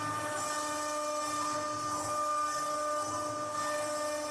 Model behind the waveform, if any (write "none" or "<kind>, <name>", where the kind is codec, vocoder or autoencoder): none